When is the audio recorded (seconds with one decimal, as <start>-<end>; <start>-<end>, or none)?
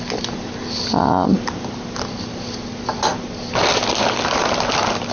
0.0-5.1